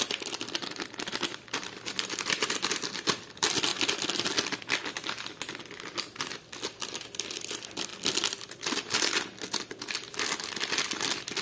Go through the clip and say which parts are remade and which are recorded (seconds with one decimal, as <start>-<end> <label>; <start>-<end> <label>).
0.0-11.4 recorded